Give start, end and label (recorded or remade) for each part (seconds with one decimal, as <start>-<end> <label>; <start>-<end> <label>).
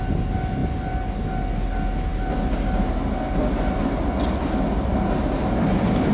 0.0-6.1 recorded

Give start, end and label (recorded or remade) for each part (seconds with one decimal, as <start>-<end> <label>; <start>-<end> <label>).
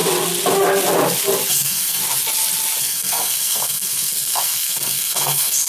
0.0-1.5 recorded; 1.5-2.0 remade; 2.0-2.8 recorded; 2.8-5.7 remade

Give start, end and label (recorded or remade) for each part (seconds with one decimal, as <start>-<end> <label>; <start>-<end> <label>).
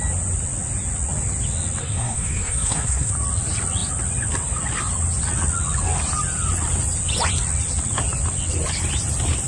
0.0-1.8 recorded; 1.8-3.1 remade; 3.1-9.5 recorded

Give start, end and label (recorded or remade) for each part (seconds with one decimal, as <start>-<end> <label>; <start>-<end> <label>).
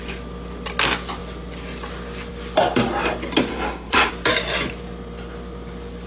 0.0-3.5 recorded; 3.5-4.1 remade; 4.1-6.1 recorded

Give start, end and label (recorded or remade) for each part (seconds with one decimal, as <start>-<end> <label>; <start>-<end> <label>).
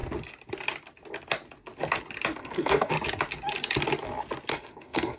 0.0-2.4 recorded; 2.4-2.9 remade; 2.9-4.5 recorded; 4.5-5.2 remade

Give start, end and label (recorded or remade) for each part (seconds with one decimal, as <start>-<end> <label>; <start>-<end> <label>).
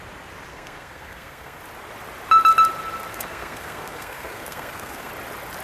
0.0-0.5 recorded; 0.5-1.6 remade; 1.6-3.1 recorded; 3.1-5.1 remade; 5.1-5.6 recorded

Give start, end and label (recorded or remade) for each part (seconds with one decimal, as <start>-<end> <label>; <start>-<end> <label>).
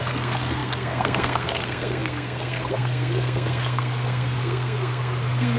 0.0-5.6 remade